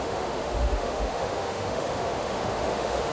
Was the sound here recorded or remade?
remade